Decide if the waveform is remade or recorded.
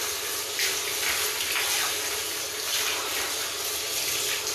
recorded